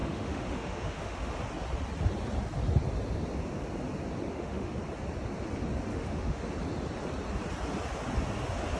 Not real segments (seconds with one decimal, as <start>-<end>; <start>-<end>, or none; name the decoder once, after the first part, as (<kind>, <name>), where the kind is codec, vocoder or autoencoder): 0.0-1.3 (autoencoder, DAC-VAE); 4.3-4.8; 5.9-6.4